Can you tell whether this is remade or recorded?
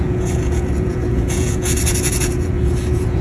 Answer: remade